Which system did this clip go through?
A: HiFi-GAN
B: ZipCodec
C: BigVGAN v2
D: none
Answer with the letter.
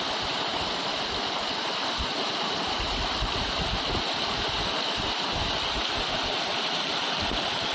D